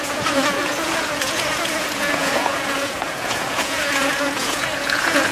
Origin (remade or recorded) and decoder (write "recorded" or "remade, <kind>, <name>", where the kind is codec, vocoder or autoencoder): remade, vocoder, Vocos